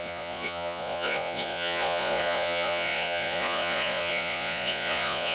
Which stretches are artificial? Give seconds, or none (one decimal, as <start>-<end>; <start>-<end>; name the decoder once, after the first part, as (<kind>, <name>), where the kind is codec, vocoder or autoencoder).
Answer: 0.0-5.3 (vocoder, Vocos)